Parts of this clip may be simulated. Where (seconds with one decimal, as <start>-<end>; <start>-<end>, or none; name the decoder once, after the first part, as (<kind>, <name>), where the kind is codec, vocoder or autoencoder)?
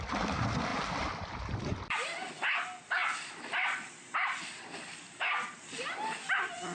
0.7-2.3 (vocoder, BigVGAN v2); 3.0-5.9